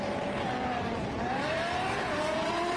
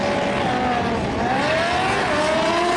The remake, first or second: first